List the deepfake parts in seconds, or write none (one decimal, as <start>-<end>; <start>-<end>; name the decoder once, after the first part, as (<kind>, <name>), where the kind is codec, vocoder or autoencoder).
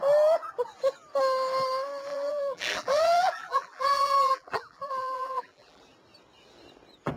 2.1-5.8 (vocoder, BigVGAN v2)